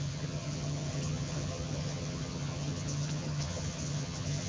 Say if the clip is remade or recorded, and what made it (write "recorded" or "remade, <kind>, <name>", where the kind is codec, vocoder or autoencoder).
remade, vocoder, HiFi-GAN